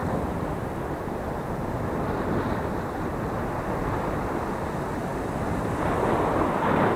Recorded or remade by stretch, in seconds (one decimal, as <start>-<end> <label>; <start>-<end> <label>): 0.0-7.0 recorded